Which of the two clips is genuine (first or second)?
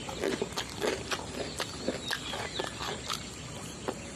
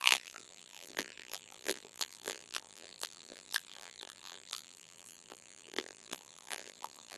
first